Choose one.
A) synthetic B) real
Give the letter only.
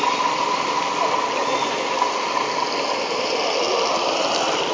B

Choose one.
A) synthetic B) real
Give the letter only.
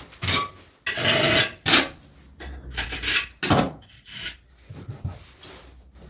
B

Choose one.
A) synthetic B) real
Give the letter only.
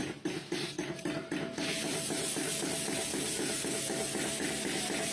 B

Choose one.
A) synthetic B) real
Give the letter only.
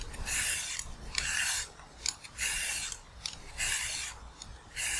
B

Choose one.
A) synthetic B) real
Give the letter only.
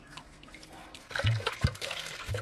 A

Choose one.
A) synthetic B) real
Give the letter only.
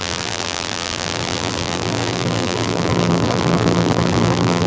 A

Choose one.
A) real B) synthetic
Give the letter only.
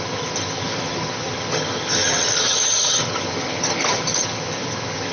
B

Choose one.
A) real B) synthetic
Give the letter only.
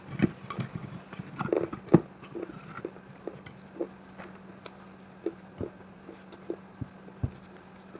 A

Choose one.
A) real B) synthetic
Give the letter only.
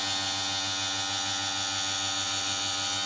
A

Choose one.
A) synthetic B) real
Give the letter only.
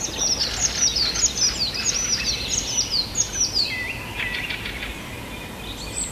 B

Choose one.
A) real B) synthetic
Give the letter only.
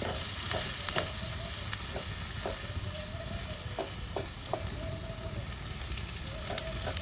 A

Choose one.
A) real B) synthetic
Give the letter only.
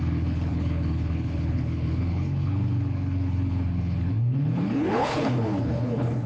B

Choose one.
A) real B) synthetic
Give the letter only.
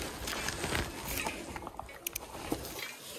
A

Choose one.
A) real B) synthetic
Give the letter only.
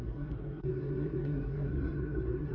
B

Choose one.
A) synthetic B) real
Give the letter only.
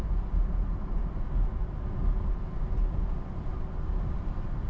B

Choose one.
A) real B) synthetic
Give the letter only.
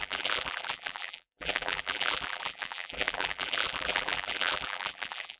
B